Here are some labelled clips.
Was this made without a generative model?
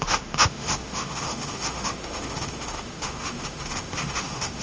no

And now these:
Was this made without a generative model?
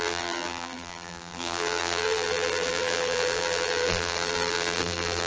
no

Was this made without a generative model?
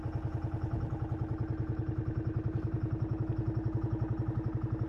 yes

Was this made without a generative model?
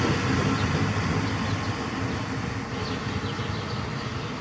yes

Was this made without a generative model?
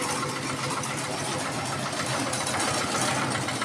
yes